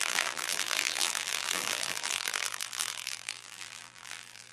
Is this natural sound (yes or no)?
no